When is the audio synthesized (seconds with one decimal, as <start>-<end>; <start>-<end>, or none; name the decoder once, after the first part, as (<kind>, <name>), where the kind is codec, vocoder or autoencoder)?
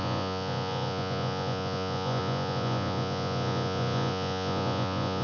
0.0-5.2 (vocoder, Vocos)